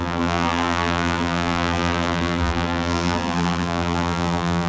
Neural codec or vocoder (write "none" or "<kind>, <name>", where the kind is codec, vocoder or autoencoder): vocoder, BigVGAN v2